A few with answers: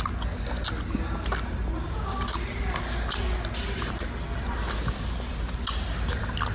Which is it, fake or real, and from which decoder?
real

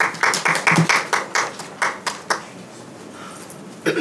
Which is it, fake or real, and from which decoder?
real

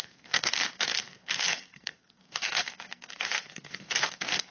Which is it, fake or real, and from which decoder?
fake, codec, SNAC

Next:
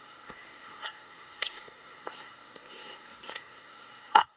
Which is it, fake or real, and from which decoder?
fake, codec, SNAC